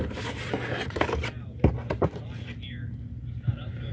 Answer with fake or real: real